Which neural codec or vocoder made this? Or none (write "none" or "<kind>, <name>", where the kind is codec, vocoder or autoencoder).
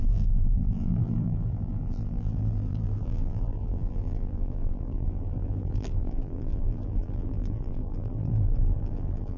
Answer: vocoder, BigVGAN v2